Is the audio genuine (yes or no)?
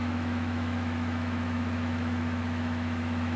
no